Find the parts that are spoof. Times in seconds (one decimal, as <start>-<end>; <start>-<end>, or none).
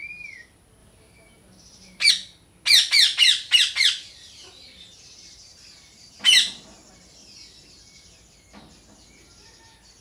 0.8-2.1; 5.5-6.9